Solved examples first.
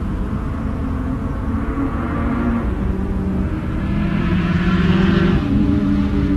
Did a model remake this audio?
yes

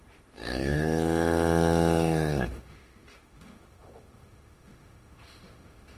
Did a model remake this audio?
yes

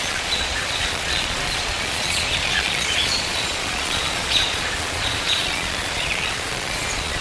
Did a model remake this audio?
yes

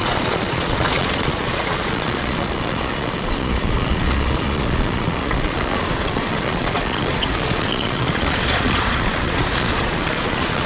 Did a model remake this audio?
yes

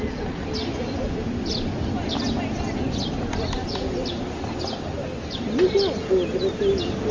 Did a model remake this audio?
no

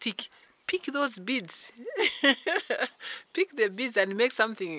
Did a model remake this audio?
no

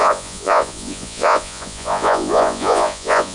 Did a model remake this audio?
yes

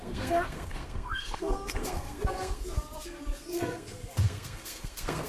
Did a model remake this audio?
yes